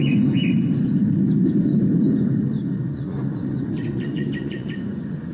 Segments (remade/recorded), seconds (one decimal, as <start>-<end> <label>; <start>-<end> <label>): 0.0-0.4 remade; 0.4-2.7 recorded; 2.7-5.3 remade